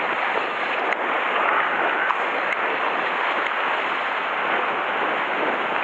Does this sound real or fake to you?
real